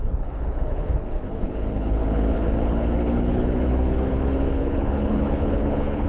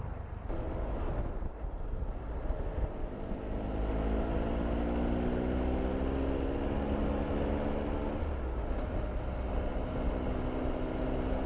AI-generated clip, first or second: first